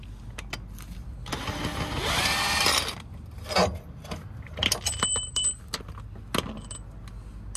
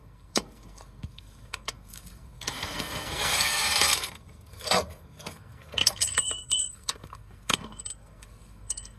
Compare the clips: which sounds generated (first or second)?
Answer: second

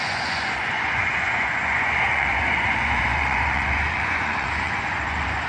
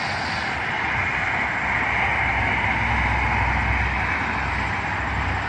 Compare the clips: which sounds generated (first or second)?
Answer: first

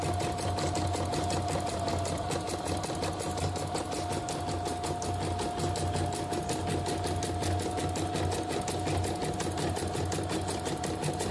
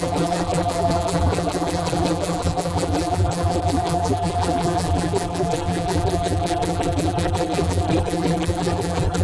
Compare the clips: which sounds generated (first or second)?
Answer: second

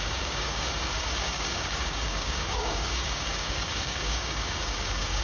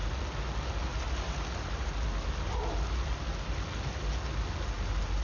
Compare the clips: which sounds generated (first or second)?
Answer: first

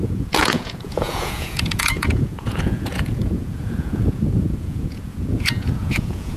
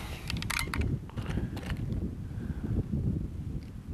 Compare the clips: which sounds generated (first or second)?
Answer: first